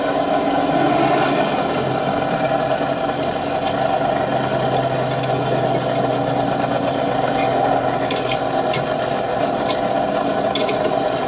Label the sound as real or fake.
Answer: real